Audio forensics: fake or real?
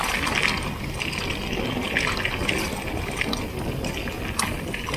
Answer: real